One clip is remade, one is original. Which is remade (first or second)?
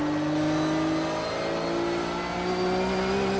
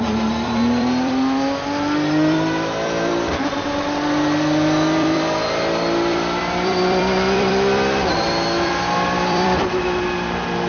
second